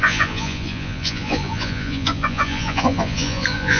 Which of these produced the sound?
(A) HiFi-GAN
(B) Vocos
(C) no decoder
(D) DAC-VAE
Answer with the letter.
B